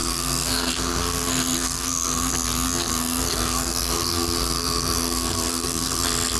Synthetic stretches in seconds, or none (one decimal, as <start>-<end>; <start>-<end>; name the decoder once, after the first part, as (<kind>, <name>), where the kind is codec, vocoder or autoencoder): 0.0-2.3 (codec, SNAC); 2.9-6.0